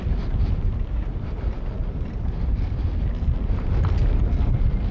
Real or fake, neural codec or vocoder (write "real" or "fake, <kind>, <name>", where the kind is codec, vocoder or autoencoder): real